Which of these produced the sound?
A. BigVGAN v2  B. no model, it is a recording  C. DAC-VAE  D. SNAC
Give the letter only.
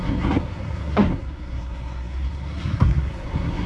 D